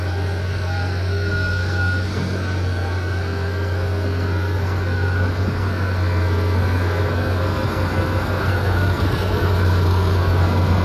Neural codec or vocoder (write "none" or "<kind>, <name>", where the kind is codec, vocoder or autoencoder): codec, SNAC